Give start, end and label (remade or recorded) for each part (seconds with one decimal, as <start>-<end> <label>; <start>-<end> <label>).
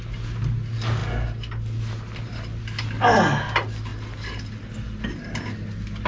0.0-6.1 recorded